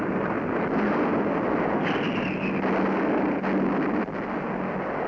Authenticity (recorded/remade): recorded